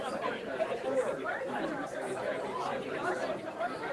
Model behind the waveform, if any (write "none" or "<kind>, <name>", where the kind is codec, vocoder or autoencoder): vocoder, BigVGAN v2